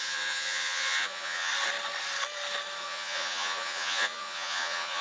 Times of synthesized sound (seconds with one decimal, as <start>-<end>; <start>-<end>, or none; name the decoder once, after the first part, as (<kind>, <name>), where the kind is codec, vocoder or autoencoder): 0.0-1.5 (vocoder, Vocos); 2.8-5.0